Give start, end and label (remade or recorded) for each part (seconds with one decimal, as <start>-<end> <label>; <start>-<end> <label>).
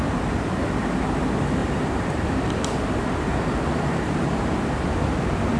0.0-1.6 recorded; 1.6-5.0 remade; 5.0-5.6 recorded